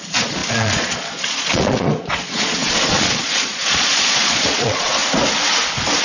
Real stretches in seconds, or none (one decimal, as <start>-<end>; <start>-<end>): 5.0-6.0